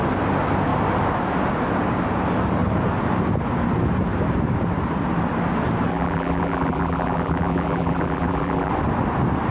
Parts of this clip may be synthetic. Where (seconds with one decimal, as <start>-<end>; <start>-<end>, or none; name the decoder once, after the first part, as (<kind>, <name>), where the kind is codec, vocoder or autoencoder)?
5.9-8.7 (vocoder, BigVGAN v2)